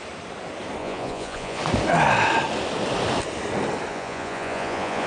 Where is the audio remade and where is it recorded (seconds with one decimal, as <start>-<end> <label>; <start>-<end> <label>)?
0.0-0.8 recorded; 0.8-1.6 remade; 1.6-3.9 recorded; 3.9-5.1 remade